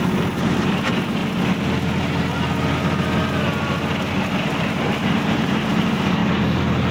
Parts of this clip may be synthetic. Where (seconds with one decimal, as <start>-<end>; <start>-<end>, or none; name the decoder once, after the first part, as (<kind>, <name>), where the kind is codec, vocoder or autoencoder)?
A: 0.0-1.2 (vocoder, BigVGAN v2); 4.6-6.2